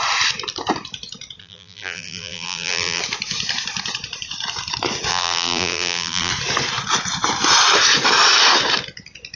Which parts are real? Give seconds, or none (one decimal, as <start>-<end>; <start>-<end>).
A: 0.0-1.4; 3.0-5.1; 6.3-9.4